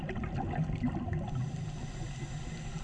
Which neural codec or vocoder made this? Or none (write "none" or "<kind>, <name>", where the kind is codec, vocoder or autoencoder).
none